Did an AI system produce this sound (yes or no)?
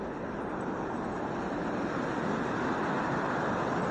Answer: no